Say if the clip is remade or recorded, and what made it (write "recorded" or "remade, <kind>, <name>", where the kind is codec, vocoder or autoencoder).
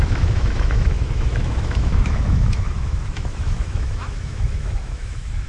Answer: remade, autoencoder, DAC-VAE